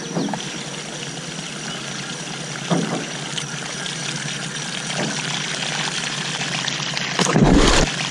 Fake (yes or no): no